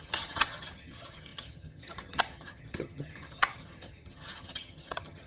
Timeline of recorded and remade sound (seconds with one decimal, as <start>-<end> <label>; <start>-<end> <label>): 0.0-5.3 remade